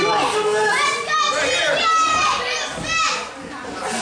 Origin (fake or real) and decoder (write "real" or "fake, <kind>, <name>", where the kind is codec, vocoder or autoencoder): real